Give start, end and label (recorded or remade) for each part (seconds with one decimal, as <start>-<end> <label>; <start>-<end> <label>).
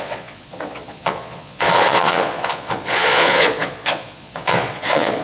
0.0-5.2 remade